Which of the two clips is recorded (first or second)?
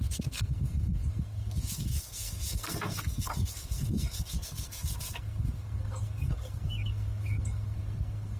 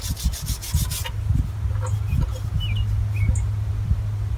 second